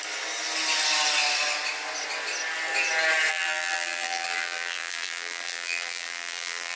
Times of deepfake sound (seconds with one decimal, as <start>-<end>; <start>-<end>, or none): 3.3-6.8